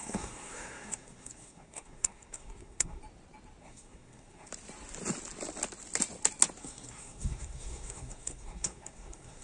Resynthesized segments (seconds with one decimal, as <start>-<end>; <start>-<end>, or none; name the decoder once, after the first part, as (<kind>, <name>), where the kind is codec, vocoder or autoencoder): 0.0-3.0 (codec, SNAC); 3.6-4.5; 6.6-9.4